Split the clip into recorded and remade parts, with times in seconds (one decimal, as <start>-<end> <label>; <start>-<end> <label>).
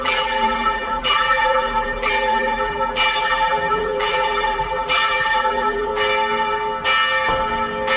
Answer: 0.0-5.9 remade; 5.9-8.0 recorded